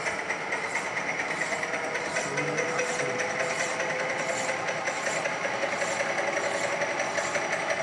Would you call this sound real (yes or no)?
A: yes